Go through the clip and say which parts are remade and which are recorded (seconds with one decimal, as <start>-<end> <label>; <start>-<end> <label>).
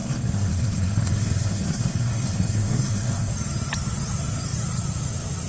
0.0-3.3 remade; 3.3-5.5 recorded